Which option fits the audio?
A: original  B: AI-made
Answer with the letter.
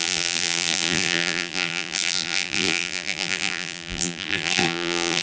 B